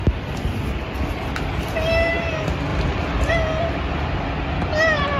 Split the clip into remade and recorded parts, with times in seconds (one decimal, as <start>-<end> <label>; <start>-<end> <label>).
0.0-2.7 recorded; 2.7-3.3 remade; 3.3-5.2 recorded